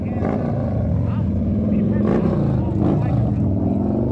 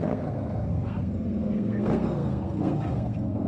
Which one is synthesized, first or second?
second